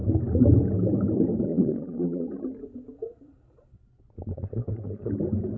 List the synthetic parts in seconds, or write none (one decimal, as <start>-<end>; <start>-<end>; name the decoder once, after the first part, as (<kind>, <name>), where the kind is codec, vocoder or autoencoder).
1.5-2.4 (vocoder, Vocos); 3.1-5.1